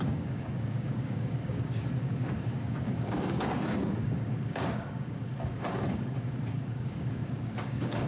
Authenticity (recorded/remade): remade